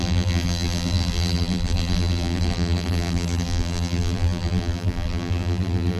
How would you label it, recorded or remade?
remade